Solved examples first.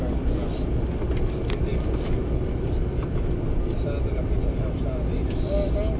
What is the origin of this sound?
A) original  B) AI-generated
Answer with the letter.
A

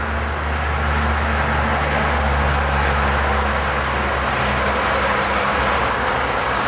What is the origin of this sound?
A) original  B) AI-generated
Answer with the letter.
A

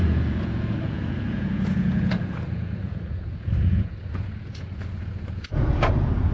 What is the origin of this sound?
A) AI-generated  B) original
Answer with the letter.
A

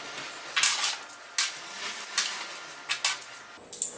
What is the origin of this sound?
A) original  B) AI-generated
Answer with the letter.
A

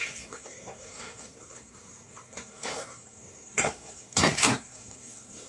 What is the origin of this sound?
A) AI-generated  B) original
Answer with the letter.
A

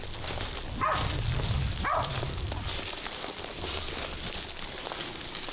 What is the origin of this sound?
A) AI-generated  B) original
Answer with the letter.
B